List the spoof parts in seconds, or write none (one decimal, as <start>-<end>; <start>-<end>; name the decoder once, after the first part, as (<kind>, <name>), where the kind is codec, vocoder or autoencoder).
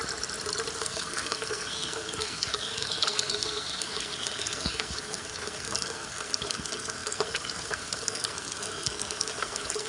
0.8-9.9 (codec, SNAC)